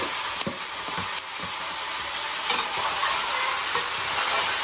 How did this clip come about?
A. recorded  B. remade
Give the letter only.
A